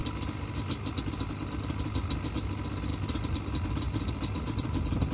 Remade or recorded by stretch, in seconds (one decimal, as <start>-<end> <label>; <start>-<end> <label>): 0.0-5.1 recorded